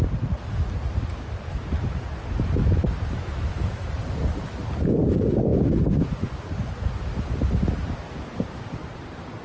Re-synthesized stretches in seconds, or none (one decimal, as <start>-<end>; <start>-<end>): 2.6-3.9